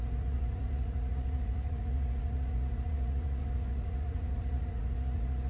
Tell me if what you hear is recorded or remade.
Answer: remade